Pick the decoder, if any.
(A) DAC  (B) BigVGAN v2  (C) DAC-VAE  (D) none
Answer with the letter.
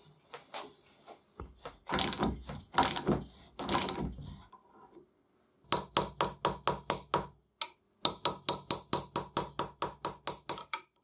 D